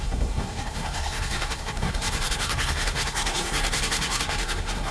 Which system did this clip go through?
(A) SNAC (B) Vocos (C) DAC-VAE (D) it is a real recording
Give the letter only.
A